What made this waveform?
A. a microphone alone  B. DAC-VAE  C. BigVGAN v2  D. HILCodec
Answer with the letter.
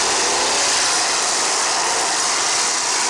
A